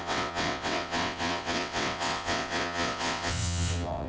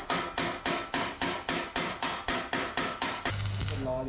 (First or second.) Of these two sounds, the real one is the second